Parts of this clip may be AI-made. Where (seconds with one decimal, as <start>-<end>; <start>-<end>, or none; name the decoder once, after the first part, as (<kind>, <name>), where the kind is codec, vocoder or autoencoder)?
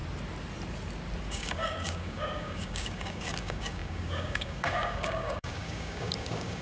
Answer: 1.3-6.6 (codec, DAC)